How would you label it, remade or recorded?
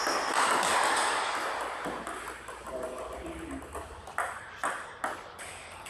recorded